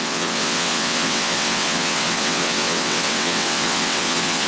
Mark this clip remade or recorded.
remade